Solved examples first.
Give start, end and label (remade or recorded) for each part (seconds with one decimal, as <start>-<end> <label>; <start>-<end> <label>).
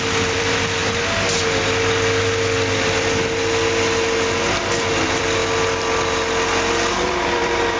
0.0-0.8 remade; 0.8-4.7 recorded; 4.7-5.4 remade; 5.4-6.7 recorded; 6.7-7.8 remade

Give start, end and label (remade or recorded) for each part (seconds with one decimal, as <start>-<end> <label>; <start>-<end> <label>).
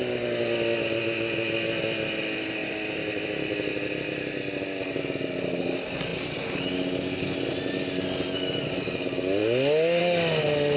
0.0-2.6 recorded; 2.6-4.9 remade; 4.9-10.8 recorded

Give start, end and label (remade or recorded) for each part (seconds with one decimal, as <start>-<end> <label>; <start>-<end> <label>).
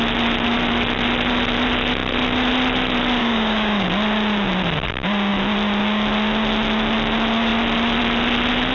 0.0-3.2 recorded; 3.2-3.9 remade; 3.9-8.7 recorded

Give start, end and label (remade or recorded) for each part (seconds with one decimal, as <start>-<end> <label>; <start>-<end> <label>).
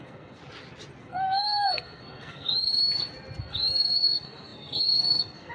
0.0-0.4 remade; 0.4-1.0 recorded; 1.0-2.8 remade; 2.8-3.4 recorded; 3.4-5.5 remade